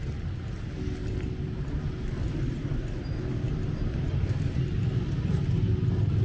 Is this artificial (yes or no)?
no